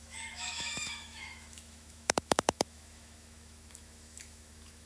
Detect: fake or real fake